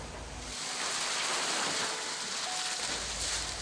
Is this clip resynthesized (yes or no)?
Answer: no